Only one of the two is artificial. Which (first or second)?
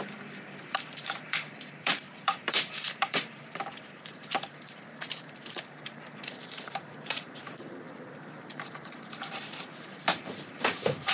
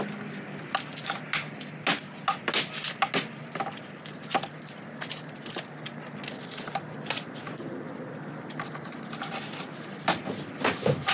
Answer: first